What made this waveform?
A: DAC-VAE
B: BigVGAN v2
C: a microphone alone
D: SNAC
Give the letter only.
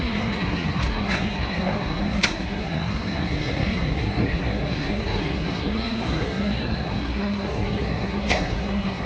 D